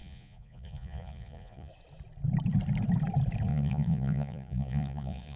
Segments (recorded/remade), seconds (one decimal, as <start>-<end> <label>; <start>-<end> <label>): 0.0-1.7 remade; 1.7-3.5 recorded; 3.5-5.4 remade